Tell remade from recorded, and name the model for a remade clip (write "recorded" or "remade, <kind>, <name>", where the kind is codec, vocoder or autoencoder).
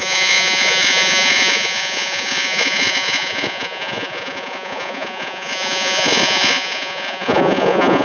remade, vocoder, Vocos